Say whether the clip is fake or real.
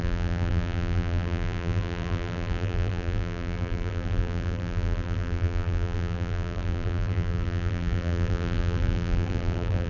fake